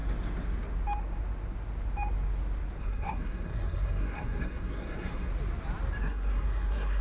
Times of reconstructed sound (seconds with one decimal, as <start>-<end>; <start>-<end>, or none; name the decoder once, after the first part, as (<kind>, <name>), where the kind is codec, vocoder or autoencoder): 2.8-5.3 (codec, SNAC); 6.0-7.0